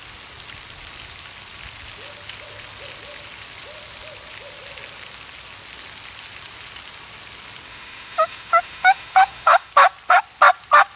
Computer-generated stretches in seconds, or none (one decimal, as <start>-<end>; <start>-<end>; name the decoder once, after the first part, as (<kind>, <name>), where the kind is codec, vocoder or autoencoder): 7.7-9.7 (autoencoder, DAC-VAE)